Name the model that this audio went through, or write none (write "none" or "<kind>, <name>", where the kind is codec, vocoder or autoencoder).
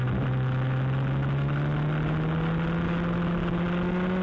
none